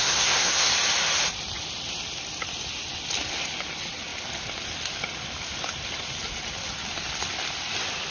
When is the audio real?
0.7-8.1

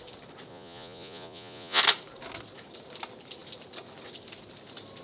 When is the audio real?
0.0-0.5; 1.8-5.0